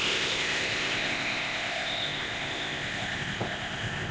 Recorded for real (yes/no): no